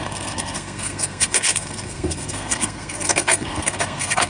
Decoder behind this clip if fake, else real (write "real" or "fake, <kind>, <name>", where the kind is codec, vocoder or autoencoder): fake, codec, SNAC